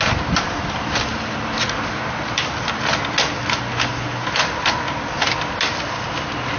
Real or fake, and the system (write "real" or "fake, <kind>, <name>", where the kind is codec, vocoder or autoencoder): real